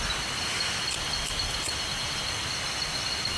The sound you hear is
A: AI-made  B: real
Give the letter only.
B